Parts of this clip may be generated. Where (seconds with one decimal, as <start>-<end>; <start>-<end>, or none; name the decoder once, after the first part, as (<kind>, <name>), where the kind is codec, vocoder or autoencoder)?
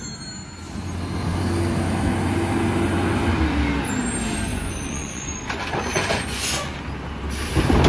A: 4.5-5.3 (vocoder, Vocos); 5.9-6.7